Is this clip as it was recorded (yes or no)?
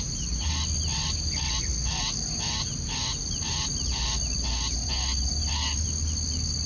yes